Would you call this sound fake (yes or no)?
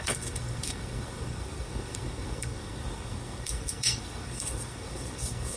yes